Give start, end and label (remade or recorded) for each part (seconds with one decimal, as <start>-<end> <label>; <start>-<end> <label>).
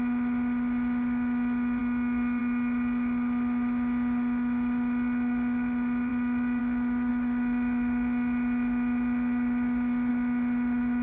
0.0-11.0 recorded